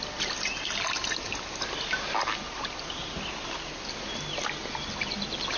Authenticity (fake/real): real